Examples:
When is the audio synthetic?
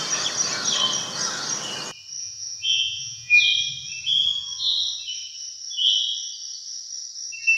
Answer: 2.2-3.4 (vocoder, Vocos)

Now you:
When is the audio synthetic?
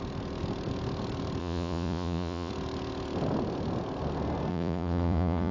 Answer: 1.4-2.5 (vocoder, Vocos); 4.5-5.5